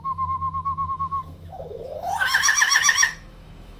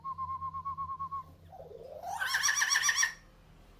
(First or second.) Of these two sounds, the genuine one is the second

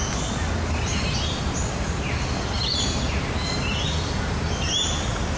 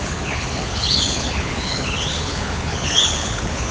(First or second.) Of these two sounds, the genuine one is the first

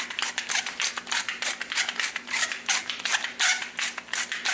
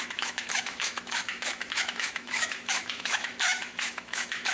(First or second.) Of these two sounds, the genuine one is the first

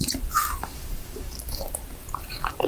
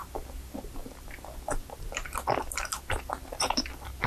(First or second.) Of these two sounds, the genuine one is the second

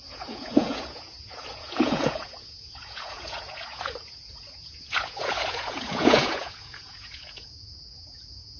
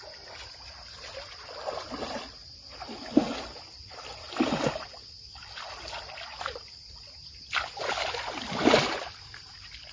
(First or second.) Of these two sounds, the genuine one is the second